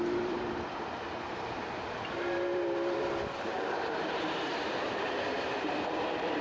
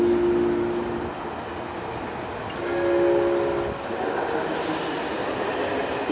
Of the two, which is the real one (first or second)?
second